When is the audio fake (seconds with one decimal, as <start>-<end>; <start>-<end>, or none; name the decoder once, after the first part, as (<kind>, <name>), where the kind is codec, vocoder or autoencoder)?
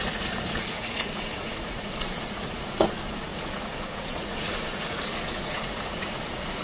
0.0-6.6 (vocoder, Vocos)